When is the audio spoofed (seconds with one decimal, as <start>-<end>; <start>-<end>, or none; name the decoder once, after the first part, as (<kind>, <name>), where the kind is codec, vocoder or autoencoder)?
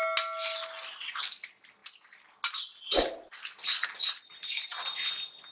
none